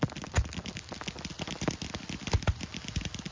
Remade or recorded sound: recorded